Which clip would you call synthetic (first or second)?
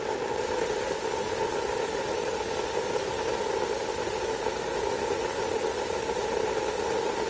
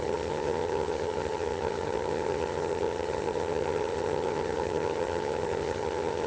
second